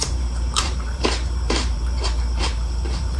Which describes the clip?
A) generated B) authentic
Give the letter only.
A